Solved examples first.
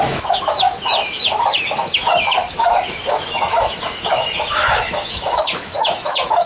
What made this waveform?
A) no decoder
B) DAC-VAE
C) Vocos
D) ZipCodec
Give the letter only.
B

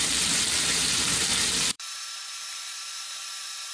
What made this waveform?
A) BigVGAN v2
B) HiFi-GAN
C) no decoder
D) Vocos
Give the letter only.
A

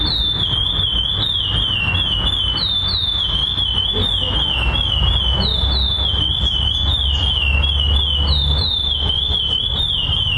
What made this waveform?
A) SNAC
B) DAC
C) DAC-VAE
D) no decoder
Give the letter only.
D